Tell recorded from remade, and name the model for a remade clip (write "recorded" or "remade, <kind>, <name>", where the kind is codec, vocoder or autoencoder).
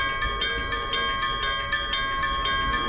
recorded